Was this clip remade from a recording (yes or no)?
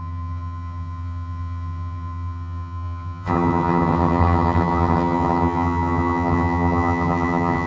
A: yes